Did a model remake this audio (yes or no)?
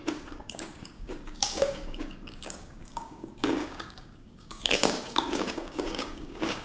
yes